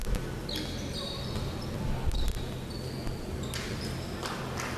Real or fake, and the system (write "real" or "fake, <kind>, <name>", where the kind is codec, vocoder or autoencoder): real